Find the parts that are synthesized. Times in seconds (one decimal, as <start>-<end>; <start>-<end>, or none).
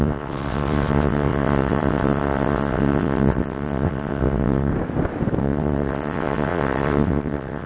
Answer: 0.0-4.7; 5.4-7.7